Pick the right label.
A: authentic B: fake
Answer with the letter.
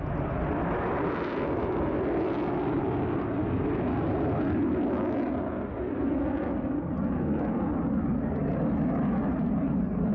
A